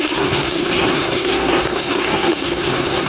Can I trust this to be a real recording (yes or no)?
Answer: no